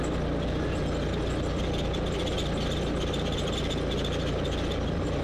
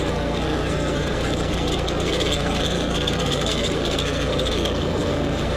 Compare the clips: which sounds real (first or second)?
first